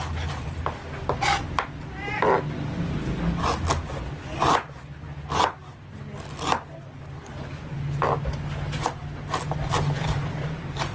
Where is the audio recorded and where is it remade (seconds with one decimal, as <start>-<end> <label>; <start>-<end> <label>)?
0.0-10.9 recorded